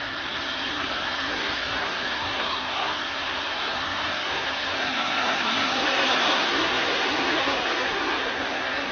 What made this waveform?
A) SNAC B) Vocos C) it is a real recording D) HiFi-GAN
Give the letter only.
A